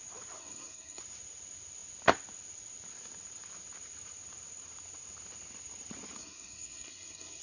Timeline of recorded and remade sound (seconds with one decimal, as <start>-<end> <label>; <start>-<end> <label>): 0.0-0.4 recorded; 0.4-1.0 remade; 1.0-6.2 recorded; 6.2-7.4 remade